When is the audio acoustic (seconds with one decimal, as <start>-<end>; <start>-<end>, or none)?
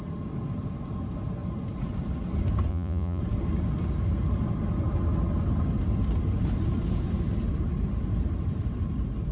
0.0-2.7; 3.2-9.3